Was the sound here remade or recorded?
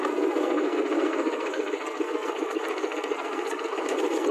remade